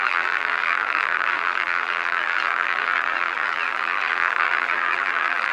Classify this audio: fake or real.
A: fake